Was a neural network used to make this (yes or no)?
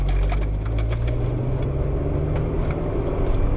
no